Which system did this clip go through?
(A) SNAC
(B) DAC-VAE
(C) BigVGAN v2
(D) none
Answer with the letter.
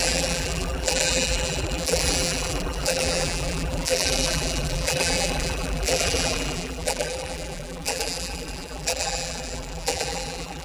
C